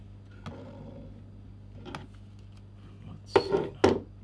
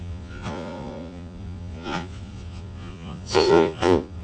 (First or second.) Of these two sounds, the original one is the first